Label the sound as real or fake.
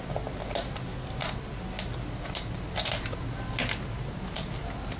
real